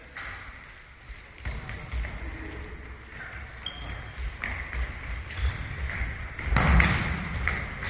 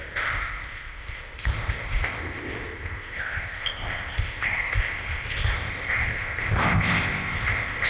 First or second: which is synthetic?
second